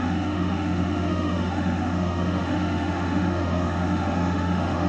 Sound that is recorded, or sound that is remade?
remade